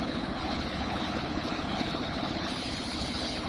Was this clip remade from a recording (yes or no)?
yes